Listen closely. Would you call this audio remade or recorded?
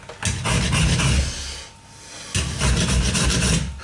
recorded